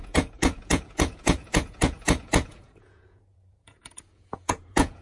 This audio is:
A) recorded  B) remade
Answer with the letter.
B